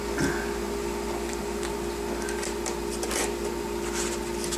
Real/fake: real